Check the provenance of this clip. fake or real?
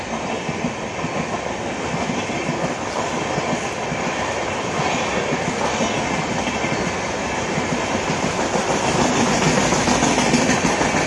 real